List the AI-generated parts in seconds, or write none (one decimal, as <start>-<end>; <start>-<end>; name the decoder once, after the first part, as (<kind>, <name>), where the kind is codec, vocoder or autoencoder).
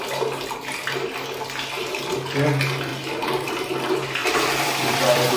4.2-5.4 (vocoder, BigVGAN v2)